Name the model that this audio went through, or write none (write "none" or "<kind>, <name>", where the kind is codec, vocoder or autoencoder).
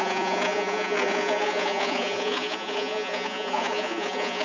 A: vocoder, Vocos